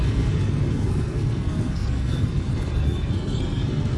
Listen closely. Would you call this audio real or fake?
fake